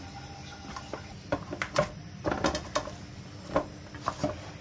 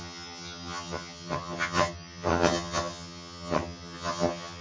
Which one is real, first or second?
first